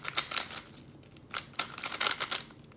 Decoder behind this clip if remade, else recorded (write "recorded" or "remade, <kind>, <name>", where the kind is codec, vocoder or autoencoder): recorded